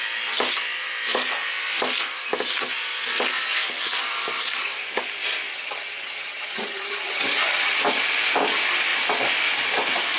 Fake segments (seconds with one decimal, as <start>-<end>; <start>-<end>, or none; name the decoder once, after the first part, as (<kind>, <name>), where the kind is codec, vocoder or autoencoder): 5.5-7.8 (vocoder, HiFi-GAN)